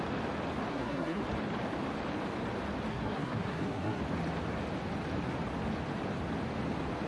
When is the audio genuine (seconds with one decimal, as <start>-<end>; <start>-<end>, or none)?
0.0-0.7; 1.2-2.9; 4.0-7.1